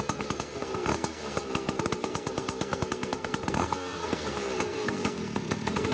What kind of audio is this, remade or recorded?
remade